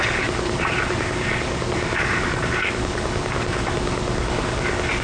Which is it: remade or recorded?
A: remade